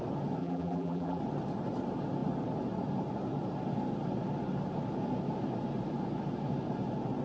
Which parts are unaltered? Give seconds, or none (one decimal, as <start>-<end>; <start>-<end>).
0.0-0.4; 1.2-7.2